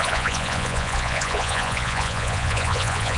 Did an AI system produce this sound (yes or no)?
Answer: yes